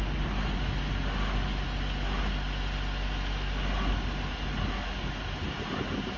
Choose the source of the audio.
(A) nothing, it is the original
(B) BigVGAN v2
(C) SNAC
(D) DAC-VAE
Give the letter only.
A